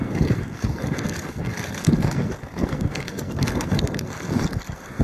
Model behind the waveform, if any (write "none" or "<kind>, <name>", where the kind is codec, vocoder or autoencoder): codec, SNAC